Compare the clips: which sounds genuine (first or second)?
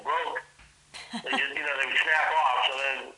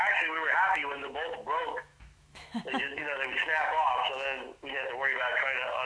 first